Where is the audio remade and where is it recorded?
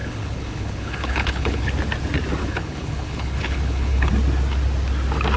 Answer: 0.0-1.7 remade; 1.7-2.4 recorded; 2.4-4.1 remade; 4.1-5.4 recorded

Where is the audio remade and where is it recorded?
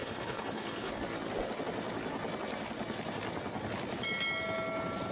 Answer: 0.0-0.9 remade; 0.9-5.1 recorded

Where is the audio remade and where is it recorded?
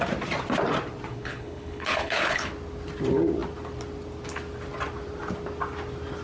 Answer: 0.0-1.1 recorded; 1.1-2.5 remade; 2.5-6.2 recorded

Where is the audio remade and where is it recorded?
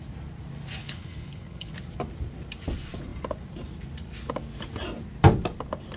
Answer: 0.0-0.8 recorded; 0.8-1.7 remade; 1.7-6.0 recorded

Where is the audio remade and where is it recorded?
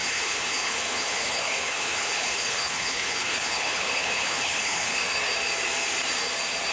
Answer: 0.0-5.0 remade; 5.0-6.7 recorded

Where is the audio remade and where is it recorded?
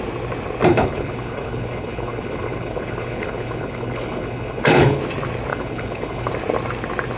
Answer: 0.0-0.7 recorded; 0.7-5.0 remade; 5.0-5.5 recorded; 5.5-6.3 remade; 6.3-7.2 recorded